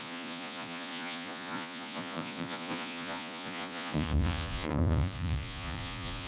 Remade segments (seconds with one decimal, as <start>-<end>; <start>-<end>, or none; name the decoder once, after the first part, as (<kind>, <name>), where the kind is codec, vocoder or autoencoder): 0.0-6.3 (vocoder, Vocos)